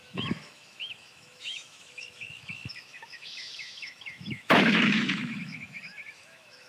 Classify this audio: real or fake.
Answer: fake